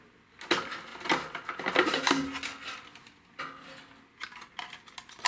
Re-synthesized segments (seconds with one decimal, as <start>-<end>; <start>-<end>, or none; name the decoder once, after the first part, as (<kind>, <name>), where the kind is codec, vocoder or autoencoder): none